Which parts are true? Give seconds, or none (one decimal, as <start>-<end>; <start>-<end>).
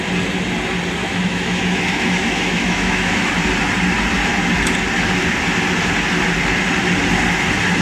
0.0-1.0; 3.3-7.8